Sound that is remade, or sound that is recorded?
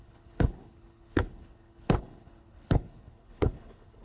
remade